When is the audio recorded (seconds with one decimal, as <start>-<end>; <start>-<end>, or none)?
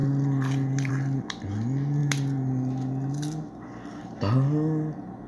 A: 0.0-5.3